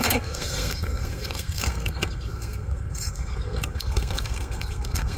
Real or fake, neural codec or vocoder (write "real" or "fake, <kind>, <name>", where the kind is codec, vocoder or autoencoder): fake, codec, SNAC